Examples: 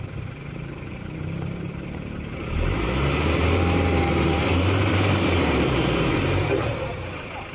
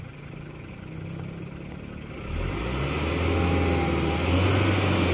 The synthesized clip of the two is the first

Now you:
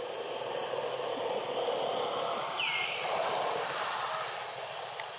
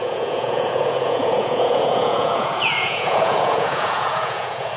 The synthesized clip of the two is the second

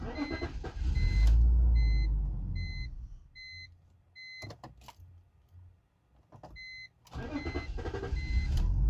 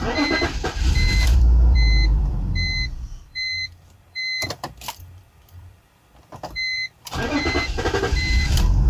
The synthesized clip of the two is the second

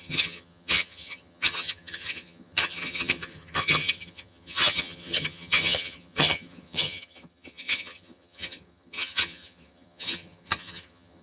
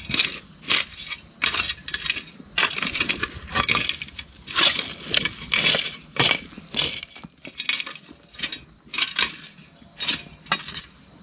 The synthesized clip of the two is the first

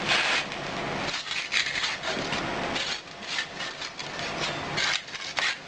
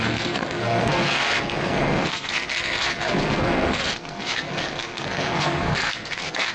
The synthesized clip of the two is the second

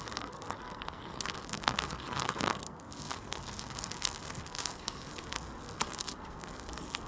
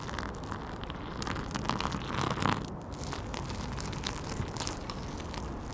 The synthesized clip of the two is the first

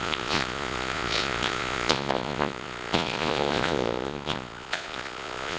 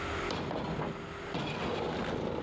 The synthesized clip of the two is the first